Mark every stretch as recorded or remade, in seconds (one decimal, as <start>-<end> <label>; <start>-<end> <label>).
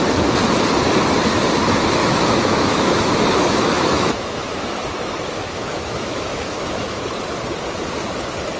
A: 0.0-2.0 recorded; 2.0-7.0 remade; 7.0-8.6 recorded